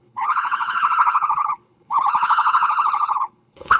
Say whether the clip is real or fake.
fake